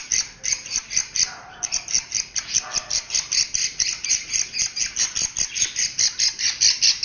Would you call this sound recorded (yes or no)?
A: yes